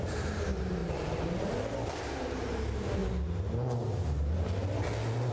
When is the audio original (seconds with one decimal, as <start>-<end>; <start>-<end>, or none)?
0.8-2.0; 3.0-5.3